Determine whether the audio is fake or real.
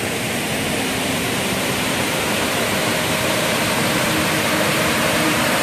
fake